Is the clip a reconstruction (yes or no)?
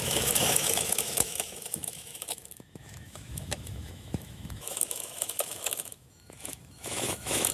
yes